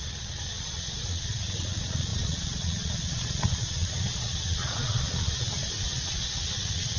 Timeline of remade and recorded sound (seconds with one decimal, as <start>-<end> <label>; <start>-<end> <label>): 0.0-7.0 remade